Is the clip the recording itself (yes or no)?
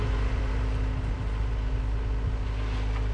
yes